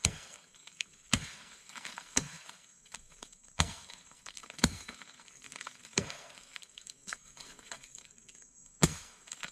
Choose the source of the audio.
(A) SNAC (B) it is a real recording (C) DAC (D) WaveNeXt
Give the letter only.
A